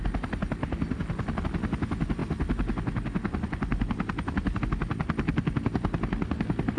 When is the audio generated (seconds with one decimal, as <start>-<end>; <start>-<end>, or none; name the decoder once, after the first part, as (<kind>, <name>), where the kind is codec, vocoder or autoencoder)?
none